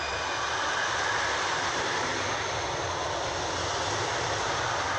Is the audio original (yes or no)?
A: yes